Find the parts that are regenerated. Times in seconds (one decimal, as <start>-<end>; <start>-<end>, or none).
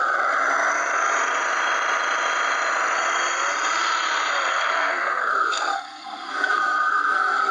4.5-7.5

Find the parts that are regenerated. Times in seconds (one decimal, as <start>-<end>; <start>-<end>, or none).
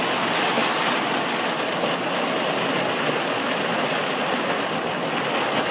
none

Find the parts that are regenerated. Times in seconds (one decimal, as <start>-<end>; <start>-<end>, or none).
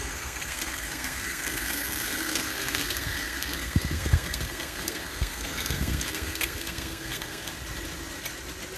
0.0-7.5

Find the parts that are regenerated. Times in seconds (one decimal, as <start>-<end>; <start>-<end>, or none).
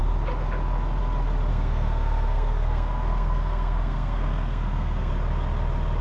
1.5-5.1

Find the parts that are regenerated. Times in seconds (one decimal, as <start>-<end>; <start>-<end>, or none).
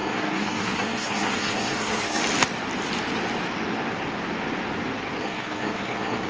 0.0-2.2; 5.2-6.3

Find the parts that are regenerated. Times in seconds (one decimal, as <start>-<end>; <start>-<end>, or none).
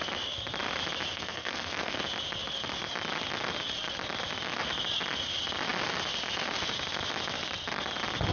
1.1-2.0